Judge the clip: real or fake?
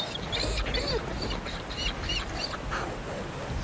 real